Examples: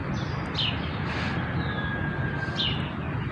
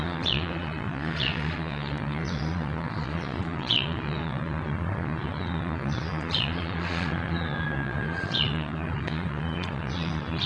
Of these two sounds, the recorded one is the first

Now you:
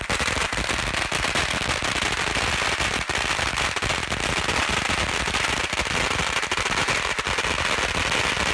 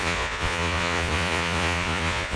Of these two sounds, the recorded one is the first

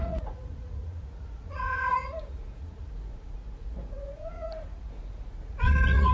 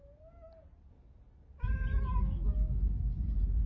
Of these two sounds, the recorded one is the second